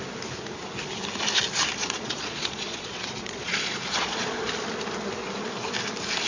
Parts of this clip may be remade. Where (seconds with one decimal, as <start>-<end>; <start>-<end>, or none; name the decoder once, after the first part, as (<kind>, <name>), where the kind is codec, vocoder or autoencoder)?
1.8-4.4 (vocoder, Vocos)